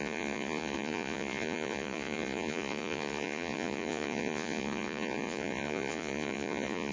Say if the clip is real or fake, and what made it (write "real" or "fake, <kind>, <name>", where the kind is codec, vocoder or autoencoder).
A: fake, vocoder, Vocos